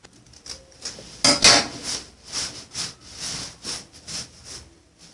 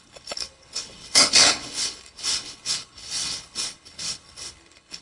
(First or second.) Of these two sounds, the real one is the first